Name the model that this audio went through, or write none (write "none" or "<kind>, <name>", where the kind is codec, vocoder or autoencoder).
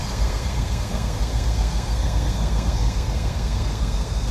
codec, SNAC